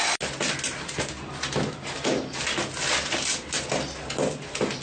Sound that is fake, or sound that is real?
real